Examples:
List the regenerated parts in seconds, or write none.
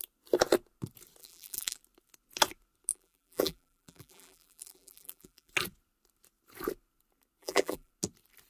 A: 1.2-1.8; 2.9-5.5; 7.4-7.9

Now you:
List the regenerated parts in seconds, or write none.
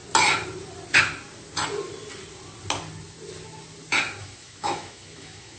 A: 4.2-5.6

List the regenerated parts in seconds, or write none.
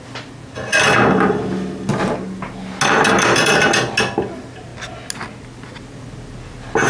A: none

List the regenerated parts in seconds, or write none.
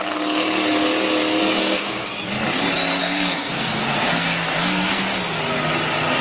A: 1.4-2.1; 3.0-5.0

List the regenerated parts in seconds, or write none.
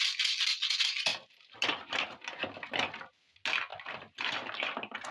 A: none